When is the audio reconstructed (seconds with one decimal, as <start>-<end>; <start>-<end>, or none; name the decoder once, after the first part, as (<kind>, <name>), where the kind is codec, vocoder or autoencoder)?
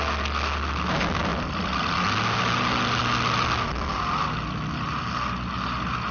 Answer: none